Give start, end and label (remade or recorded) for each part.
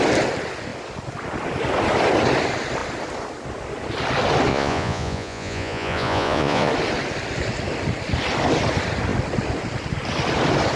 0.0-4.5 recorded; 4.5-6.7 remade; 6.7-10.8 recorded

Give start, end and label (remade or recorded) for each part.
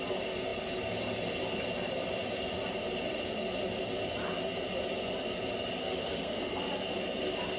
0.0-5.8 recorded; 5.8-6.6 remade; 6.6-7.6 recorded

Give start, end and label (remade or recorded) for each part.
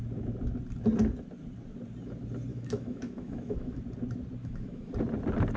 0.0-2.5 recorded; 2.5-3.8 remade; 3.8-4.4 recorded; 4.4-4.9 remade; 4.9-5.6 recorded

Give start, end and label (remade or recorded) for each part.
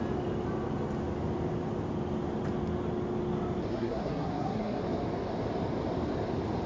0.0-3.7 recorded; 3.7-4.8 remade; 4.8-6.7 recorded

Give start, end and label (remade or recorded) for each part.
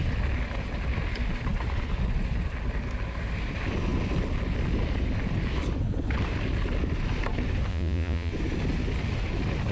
0.0-7.7 recorded; 7.7-8.3 remade; 8.3-9.7 recorded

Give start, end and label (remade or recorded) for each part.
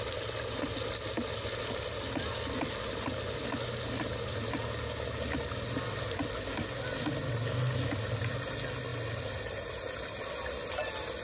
0.0-11.2 recorded